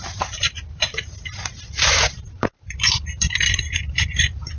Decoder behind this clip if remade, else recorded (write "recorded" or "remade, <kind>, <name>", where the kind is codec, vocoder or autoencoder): remade, vocoder, BigVGAN v2